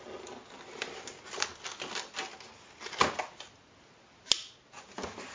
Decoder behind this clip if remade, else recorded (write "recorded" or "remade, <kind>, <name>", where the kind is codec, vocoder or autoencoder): recorded